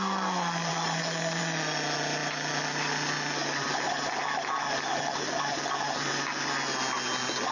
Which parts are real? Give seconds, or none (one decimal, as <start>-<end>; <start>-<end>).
0.0-7.5